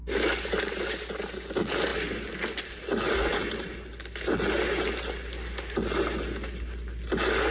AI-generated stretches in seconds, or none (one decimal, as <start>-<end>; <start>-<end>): none